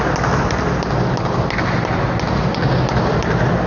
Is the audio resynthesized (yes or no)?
no